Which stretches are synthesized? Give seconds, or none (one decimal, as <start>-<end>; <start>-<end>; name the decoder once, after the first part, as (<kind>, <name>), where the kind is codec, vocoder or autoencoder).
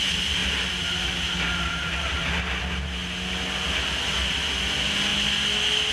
none